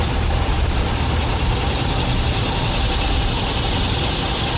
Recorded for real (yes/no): yes